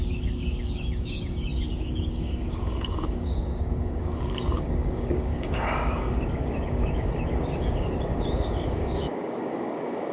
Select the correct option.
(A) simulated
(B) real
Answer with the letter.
A